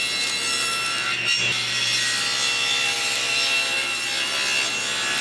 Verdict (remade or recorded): recorded